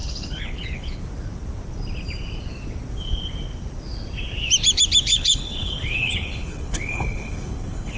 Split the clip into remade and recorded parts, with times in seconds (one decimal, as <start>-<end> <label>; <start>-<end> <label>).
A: 0.0-1.0 remade; 1.0-5.1 recorded; 5.1-8.0 remade